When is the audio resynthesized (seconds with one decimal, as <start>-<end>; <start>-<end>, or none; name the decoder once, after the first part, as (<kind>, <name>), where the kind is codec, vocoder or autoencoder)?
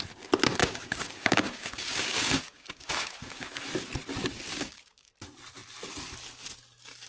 0.6-3.6 (codec, DAC); 4.5-5.1